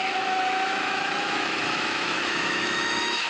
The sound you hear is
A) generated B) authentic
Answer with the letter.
A